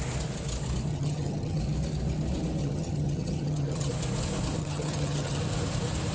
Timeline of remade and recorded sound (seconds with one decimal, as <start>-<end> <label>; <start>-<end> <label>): 0.0-0.9 recorded; 0.9-1.6 remade; 1.6-2.6 recorded; 2.6-3.9 remade; 3.9-4.6 recorded; 4.6-5.4 remade; 5.4-6.1 recorded